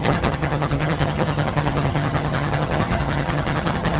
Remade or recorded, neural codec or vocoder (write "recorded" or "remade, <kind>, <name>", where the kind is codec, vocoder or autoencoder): remade, vocoder, HiFi-GAN